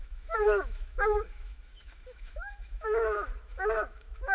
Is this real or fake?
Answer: fake